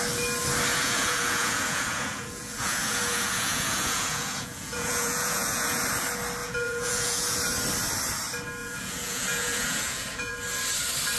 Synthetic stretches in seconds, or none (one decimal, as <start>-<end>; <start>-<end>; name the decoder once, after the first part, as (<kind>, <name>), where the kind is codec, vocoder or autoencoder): 0.7-5.8 (vocoder, Vocos); 6.4-7.4; 8.6-10.3